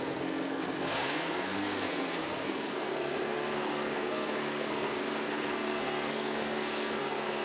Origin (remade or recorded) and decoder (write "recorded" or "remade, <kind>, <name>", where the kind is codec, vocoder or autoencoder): remade, codec, SNAC